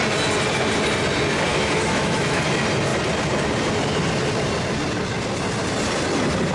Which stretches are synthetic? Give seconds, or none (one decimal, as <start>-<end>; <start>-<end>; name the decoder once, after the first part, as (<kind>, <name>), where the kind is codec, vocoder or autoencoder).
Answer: 1.5-2.4 (autoencoder, DAC-VAE)